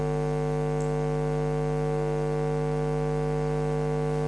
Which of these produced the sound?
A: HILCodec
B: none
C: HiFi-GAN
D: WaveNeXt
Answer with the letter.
B